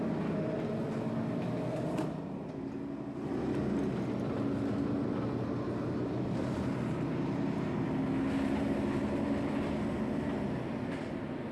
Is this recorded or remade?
recorded